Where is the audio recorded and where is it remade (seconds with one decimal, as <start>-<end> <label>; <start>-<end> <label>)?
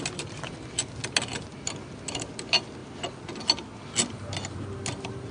0.0-5.3 recorded